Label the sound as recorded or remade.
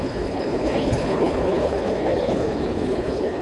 remade